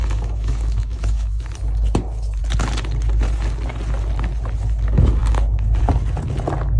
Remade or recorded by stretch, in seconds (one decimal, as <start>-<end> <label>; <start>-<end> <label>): 0.0-1.4 remade; 1.4-6.8 recorded